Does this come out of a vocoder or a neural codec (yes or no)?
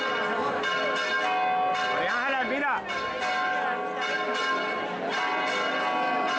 no